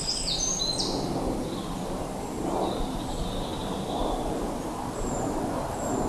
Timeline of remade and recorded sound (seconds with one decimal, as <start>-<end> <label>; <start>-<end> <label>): 0.0-3.5 recorded; 3.5-5.4 remade; 5.4-6.1 recorded